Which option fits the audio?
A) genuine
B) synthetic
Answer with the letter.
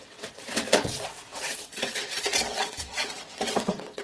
B